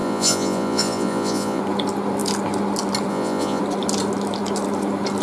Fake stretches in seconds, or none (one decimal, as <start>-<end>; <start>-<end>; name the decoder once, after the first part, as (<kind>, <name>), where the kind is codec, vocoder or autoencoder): 0.0-1.6 (vocoder, Vocos); 3.1-3.6